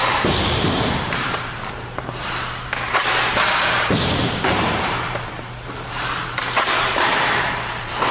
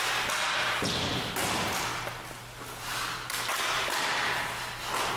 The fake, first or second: first